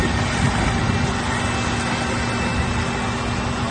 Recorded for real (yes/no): yes